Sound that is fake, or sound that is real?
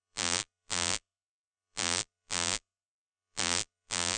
fake